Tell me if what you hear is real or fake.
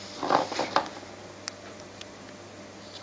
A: real